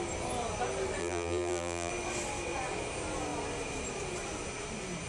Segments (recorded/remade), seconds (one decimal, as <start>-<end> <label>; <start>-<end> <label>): 0.0-1.0 recorded; 1.0-1.9 remade; 1.9-5.1 recorded